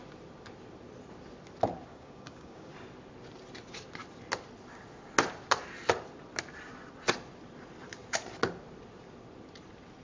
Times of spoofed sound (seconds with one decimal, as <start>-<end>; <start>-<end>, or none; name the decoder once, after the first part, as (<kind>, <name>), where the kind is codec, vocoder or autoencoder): 1.9-2.7 (codec, DAC)